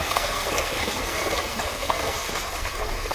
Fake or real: fake